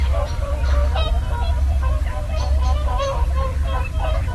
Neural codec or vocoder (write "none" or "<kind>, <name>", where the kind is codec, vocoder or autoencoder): vocoder, BigVGAN v2